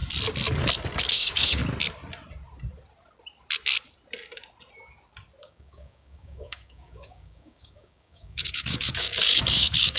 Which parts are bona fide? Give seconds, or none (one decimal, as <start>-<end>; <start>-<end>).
0.0-1.0; 1.6-5.4